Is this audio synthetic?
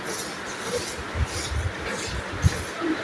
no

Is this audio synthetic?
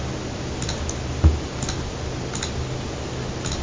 no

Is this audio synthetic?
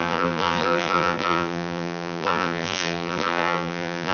yes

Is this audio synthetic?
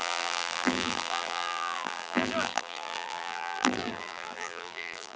yes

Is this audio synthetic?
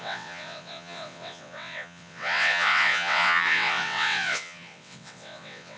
yes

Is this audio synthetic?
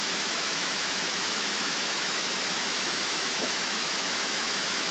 yes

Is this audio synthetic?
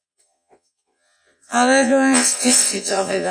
yes